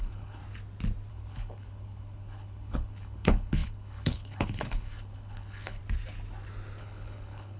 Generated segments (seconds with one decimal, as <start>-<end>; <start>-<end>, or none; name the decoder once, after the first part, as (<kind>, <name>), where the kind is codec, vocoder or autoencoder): 0.0-0.4 (codec, HILCodec); 1.1-5.8; 6.8-7.6